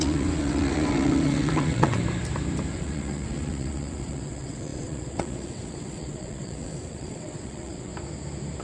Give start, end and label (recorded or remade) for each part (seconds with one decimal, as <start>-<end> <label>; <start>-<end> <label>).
0.0-2.0 remade; 2.0-2.7 recorded; 2.7-7.9 remade; 7.9-8.6 recorded